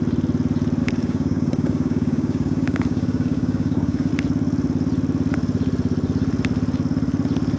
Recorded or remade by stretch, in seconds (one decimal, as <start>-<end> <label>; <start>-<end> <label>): 0.0-0.8 recorded; 0.8-4.1 remade; 4.1-7.6 recorded